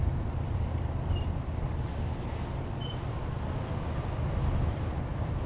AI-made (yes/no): no